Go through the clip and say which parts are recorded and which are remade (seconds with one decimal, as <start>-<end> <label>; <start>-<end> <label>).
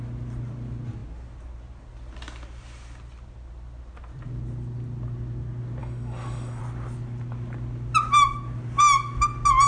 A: 0.0-5.8 recorded; 5.8-6.6 remade; 6.6-9.7 recorded